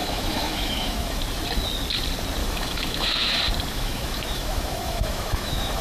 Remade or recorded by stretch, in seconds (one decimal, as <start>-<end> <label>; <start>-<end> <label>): 0.0-1.2 remade; 1.2-2.4 recorded; 2.4-3.3 remade; 3.3-3.7 recorded; 3.7-5.8 remade